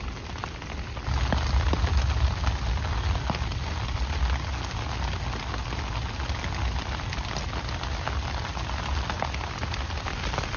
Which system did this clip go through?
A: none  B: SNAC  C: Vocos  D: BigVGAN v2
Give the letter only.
A